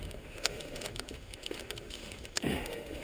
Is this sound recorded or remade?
remade